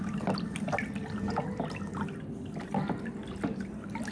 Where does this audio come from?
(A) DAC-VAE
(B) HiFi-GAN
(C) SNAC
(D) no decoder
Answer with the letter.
D